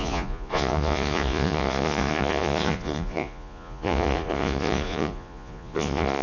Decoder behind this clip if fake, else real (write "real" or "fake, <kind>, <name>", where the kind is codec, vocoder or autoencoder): fake, vocoder, Vocos